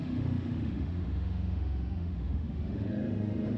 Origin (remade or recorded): remade